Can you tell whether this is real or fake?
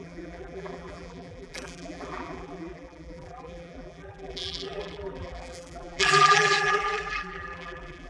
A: fake